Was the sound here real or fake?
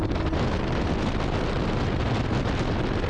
real